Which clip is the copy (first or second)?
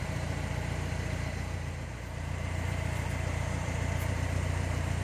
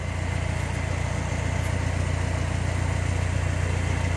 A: first